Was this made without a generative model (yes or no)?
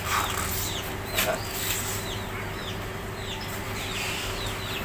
yes